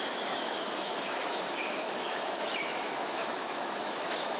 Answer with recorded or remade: remade